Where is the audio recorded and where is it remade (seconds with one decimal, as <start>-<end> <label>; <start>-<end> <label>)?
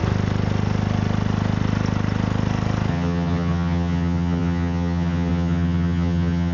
0.0-2.9 recorded; 2.9-6.5 remade